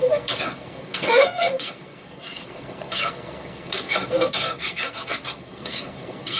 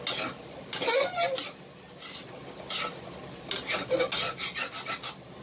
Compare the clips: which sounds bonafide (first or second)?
second